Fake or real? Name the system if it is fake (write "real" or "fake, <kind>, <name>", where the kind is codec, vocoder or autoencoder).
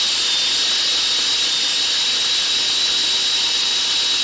real